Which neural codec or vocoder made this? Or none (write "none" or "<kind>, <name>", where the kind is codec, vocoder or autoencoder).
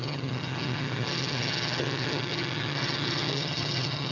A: vocoder, HiFi-GAN